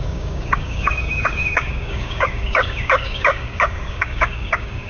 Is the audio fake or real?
fake